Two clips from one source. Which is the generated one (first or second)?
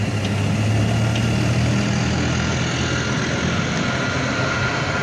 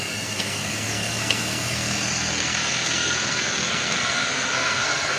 second